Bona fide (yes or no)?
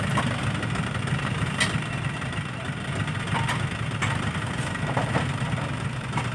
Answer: yes